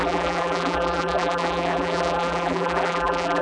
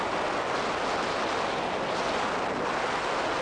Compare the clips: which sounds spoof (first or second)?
first